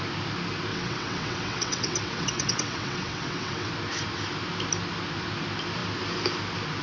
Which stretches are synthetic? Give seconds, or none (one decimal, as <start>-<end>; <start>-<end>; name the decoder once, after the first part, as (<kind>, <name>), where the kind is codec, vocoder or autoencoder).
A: 0.7-3.7 (vocoder, WaveNeXt)

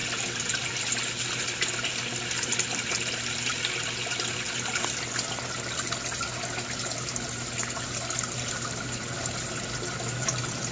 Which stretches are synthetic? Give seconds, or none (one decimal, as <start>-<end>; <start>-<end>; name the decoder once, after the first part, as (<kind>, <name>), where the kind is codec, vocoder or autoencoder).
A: none

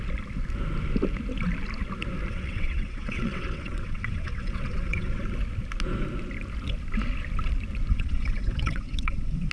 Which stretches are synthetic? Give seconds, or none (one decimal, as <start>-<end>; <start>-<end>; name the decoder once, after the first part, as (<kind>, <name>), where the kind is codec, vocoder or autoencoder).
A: 2.3-5.2 (vocoder, WaveNeXt); 7.9-9.5

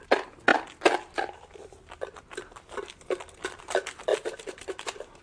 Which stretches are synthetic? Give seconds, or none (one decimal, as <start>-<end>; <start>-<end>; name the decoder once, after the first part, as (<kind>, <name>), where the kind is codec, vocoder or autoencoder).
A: none